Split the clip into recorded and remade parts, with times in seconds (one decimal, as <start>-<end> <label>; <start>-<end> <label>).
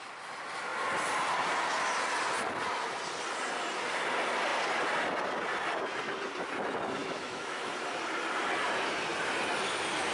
0.0-7.0 recorded; 7.0-7.7 remade; 7.7-10.1 recorded